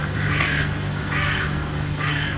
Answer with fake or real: fake